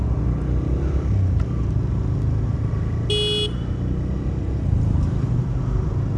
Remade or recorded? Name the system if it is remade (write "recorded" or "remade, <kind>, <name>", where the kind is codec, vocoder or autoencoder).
recorded